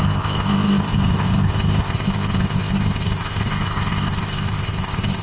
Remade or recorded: remade